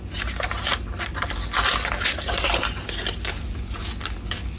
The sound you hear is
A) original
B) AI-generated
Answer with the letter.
A